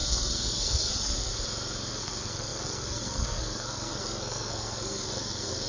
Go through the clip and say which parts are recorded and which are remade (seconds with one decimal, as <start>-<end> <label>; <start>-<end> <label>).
0.0-1.3 remade; 1.3-1.9 recorded; 1.9-5.7 remade